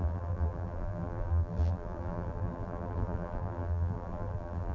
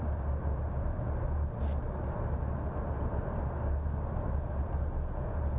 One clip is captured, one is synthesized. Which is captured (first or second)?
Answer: second